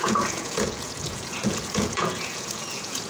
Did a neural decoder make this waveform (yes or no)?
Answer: yes